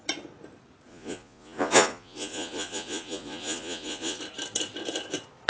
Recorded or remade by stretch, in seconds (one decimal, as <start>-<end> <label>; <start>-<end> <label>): 0.0-0.9 recorded; 0.9-4.2 remade; 4.2-5.5 recorded